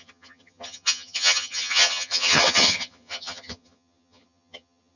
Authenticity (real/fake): fake